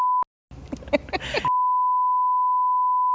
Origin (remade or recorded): recorded